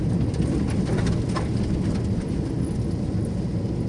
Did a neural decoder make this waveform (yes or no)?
no